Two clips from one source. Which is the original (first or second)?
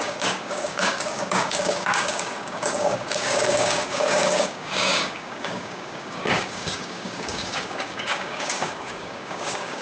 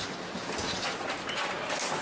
second